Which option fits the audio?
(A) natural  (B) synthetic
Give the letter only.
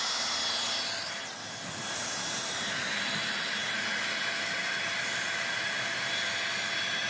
A